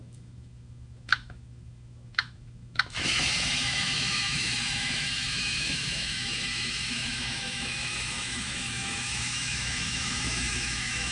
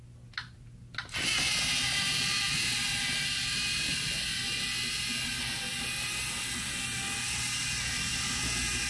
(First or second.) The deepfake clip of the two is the first